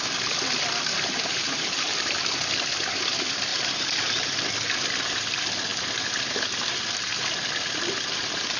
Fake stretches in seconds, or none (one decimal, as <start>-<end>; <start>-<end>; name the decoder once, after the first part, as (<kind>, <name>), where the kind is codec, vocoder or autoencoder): 0.9-2.3 (vocoder, BigVGAN v2); 3.5-4.5